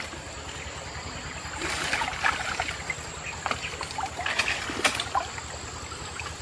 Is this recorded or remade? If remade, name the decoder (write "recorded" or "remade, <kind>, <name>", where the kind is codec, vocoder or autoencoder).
recorded